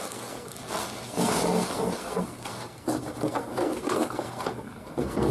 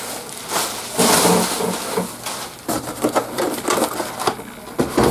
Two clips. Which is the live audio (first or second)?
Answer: second